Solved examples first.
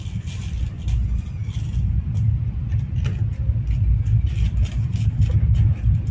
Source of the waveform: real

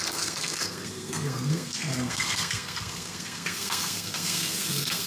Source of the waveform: fake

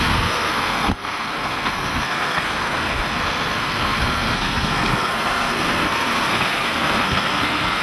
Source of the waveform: fake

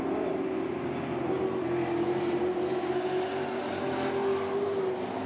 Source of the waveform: real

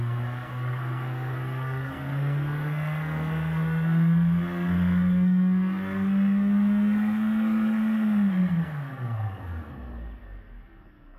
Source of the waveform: fake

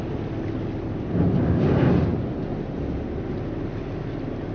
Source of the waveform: real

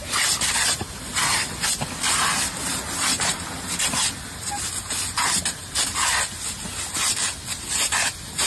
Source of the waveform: real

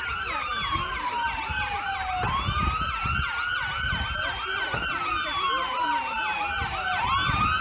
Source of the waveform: real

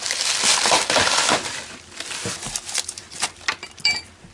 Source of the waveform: real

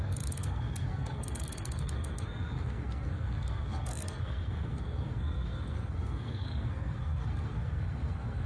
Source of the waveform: fake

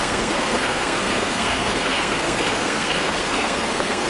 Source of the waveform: fake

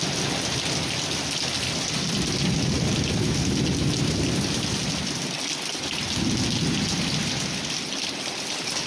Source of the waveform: real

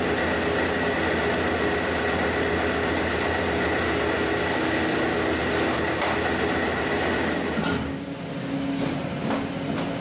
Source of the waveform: real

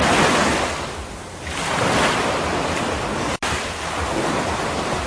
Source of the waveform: real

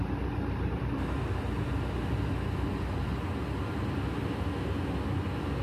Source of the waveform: real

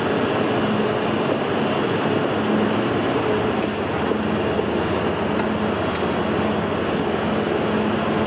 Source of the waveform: real